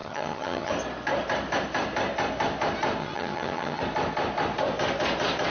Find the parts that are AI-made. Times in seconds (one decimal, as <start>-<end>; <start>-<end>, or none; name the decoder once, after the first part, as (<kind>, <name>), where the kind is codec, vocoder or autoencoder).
0.0-0.7 (vocoder, HiFi-GAN); 3.0-3.8